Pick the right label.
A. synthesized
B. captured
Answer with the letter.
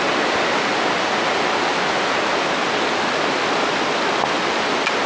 B